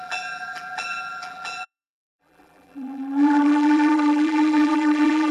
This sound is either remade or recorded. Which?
remade